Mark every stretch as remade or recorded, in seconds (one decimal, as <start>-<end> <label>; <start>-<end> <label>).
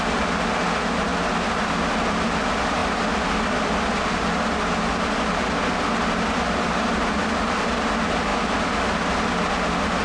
0.0-10.0 recorded